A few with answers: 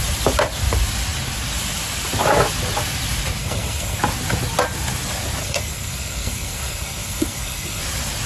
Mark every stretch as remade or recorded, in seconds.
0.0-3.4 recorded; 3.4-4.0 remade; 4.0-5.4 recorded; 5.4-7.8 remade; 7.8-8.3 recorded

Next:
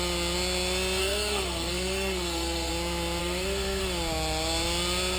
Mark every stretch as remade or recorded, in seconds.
0.0-1.0 recorded; 1.0-2.7 remade; 2.7-3.2 recorded; 3.2-3.8 remade; 3.8-5.2 recorded